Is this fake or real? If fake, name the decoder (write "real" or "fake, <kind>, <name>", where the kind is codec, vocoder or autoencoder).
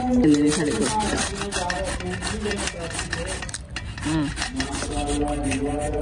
real